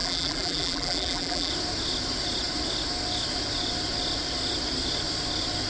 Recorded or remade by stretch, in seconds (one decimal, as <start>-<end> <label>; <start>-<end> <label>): 0.0-1.5 remade; 1.5-5.7 recorded